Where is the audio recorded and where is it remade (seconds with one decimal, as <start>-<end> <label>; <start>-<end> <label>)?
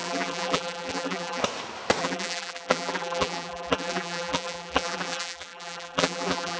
0.0-1.4 remade; 1.4-2.0 recorded; 2.0-6.6 remade